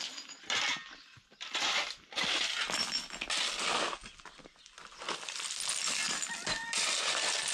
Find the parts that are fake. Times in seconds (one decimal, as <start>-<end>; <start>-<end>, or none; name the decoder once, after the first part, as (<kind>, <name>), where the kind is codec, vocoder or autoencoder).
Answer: none